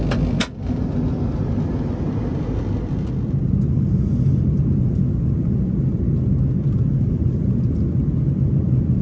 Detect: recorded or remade recorded